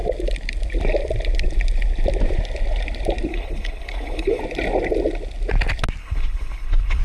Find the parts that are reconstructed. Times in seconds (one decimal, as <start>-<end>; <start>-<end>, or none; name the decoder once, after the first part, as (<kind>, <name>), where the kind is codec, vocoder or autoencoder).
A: 3.3-4.4 (codec, HILCodec); 6.0-7.0